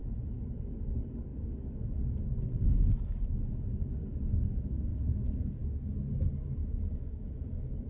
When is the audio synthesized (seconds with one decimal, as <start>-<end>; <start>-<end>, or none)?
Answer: 6.6-7.3